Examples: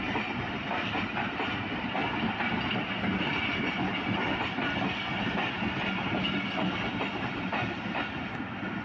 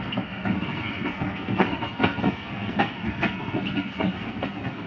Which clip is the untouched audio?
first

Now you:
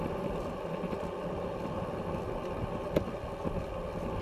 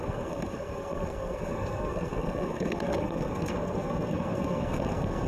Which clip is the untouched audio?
first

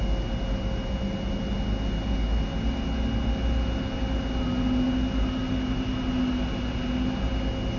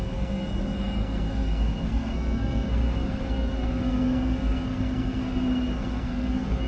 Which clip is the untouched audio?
first